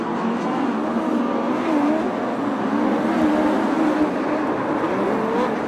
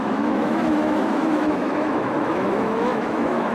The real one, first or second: first